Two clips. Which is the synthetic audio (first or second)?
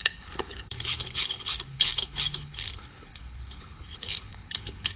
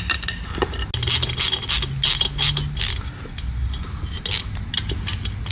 first